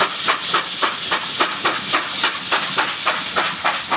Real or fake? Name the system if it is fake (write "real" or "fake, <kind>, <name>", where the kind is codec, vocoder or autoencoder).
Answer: real